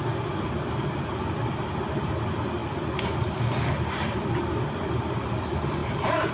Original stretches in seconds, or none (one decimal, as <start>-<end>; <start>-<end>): 0.0-6.3